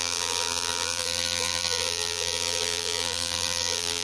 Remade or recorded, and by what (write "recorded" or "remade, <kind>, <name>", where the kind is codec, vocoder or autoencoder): remade, vocoder, BigVGAN v2